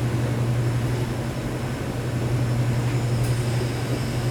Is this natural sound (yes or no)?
yes